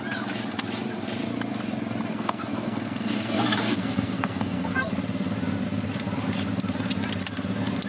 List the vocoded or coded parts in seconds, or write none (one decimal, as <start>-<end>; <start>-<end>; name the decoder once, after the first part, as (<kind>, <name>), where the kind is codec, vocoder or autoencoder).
2.1-4.9 (codec, SNAC)